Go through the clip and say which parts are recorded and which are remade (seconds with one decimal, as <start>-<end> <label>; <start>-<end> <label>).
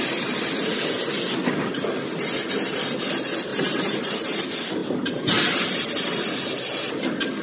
0.0-3.5 recorded; 3.5-4.1 remade; 4.1-7.4 recorded